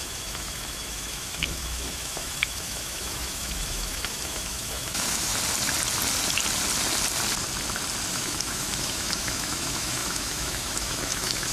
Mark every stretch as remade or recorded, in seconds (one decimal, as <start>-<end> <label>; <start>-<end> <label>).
0.0-5.3 remade; 5.3-8.1 recorded; 8.1-11.5 remade